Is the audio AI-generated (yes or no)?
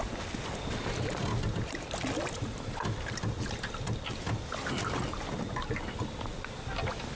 no